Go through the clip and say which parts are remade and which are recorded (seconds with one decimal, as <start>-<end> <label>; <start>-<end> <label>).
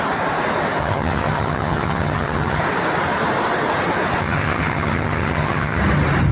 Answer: 0.0-0.8 recorded; 0.8-2.6 remade; 2.6-4.2 recorded; 4.2-5.8 remade; 5.8-6.3 recorded